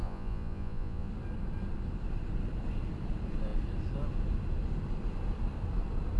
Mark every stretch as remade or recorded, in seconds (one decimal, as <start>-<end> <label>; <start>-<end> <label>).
0.0-1.1 remade; 1.1-6.2 recorded